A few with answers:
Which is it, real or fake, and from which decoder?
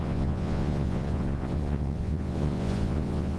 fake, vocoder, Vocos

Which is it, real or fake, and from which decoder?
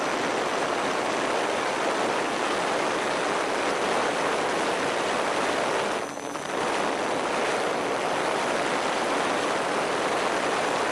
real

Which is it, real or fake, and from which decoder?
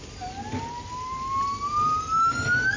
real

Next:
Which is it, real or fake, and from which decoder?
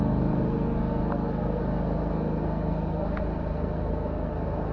fake, codec, SNAC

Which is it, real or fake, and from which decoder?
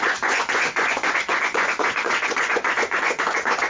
fake, vocoder, Vocos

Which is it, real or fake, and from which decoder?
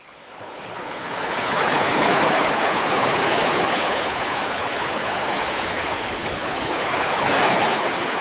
fake, codec, HILCodec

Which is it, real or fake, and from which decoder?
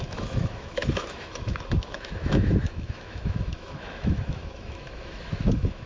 fake, autoencoder, DAC-VAE